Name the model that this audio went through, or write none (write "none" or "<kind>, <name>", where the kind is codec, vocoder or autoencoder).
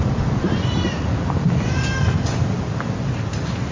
vocoder, BigVGAN v2